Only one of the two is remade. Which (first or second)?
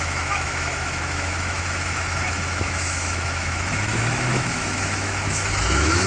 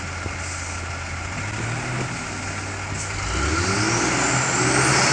first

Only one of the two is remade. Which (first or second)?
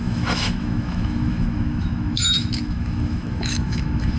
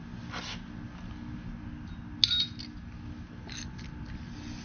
first